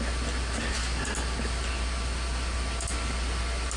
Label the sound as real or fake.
real